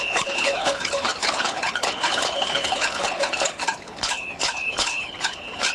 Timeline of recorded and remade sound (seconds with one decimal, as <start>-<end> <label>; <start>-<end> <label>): 0.0-5.7 remade